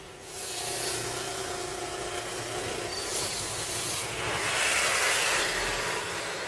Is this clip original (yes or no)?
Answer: yes